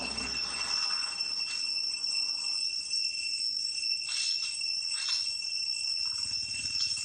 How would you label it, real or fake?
real